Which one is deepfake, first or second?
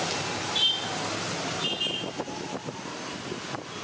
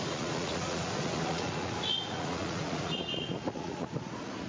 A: second